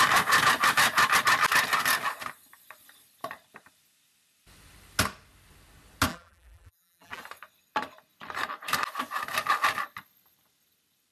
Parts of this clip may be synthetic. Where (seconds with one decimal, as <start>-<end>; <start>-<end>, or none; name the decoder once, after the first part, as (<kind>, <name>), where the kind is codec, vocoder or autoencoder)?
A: 6.1-7.2 (vocoder, BigVGAN v2)